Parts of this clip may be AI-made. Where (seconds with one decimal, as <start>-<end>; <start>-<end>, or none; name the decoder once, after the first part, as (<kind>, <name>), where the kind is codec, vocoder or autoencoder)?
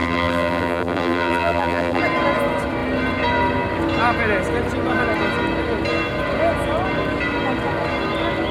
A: 0.0-2.0 (vocoder, BigVGAN v2)